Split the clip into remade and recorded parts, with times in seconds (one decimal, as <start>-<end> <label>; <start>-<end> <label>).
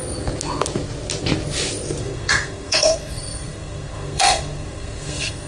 0.0-2.0 recorded; 2.0-5.5 remade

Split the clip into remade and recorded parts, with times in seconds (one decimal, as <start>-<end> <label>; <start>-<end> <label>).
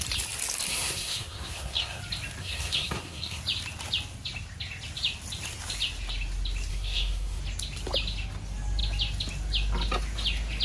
0.0-0.7 recorded; 0.7-2.0 remade; 2.0-2.4 recorded; 2.4-3.4 remade; 3.4-6.7 recorded; 6.7-7.4 remade; 7.4-10.6 recorded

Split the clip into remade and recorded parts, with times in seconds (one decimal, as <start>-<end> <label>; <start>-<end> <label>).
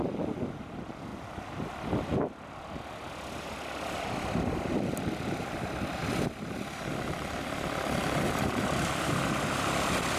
0.0-10.2 recorded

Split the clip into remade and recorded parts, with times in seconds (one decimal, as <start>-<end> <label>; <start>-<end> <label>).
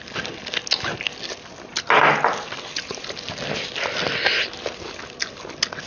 0.0-5.9 recorded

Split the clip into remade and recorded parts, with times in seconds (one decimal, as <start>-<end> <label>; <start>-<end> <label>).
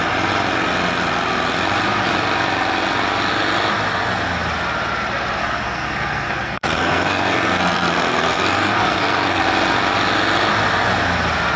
0.0-5.4 recorded; 5.4-9.4 remade; 9.4-11.6 recorded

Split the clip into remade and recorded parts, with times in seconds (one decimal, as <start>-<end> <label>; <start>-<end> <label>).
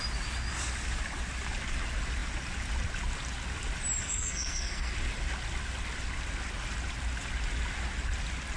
0.0-4.0 recorded; 4.0-4.9 remade; 4.9-8.6 recorded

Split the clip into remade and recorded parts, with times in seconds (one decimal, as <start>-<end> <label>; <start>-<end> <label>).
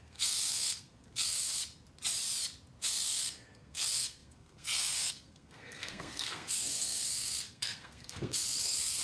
0.0-1.6 remade; 1.6-2.8 recorded; 2.8-9.0 remade